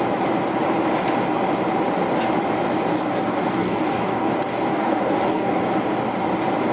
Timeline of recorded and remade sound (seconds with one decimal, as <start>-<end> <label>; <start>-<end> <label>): 0.0-3.3 recorded; 3.3-4.3 remade; 4.3-4.7 recorded; 4.7-5.6 remade; 5.6-6.7 recorded